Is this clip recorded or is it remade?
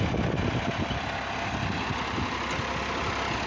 recorded